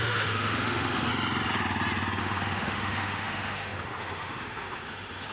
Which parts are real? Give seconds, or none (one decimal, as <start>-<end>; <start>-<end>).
1.1-2.2